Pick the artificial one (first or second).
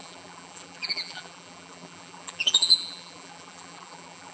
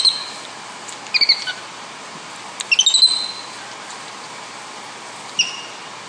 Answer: first